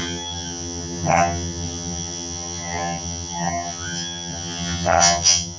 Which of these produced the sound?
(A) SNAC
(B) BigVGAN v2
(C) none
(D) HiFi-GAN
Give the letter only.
D